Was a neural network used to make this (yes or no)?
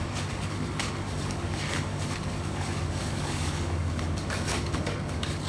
yes